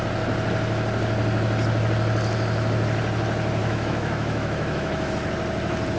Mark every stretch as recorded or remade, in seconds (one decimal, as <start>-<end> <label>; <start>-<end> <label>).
0.0-3.6 recorded; 3.6-5.1 remade; 5.1-6.0 recorded